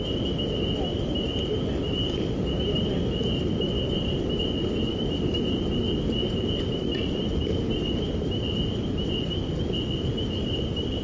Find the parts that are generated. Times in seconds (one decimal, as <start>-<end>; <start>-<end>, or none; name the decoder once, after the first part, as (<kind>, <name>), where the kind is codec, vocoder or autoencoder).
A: none